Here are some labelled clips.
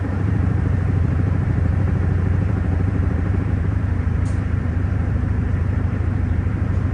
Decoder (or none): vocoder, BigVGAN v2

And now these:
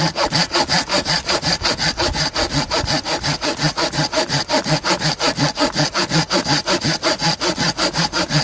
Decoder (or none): none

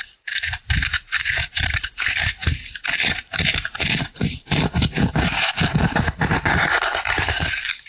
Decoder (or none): vocoder, BigVGAN v2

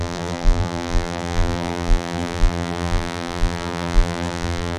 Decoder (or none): vocoder, BigVGAN v2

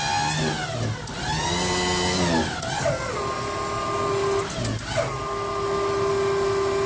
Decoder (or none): none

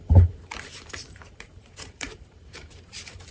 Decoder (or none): vocoder, BigVGAN v2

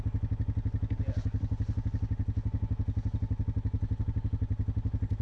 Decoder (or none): none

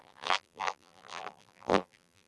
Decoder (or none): vocoder, BigVGAN v2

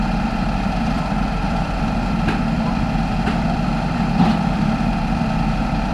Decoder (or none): vocoder, BigVGAN v2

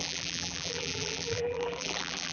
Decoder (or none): vocoder, BigVGAN v2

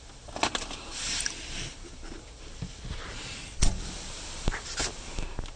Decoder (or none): none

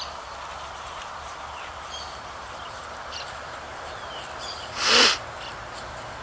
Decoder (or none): vocoder, BigVGAN v2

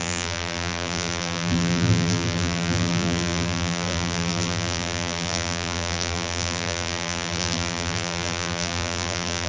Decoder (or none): vocoder, BigVGAN v2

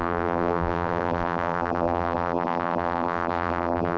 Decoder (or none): vocoder, BigVGAN v2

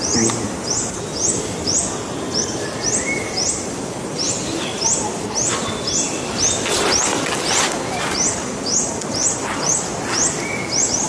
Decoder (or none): none